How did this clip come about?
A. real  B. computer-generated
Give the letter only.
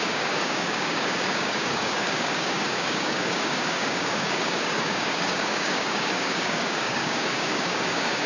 B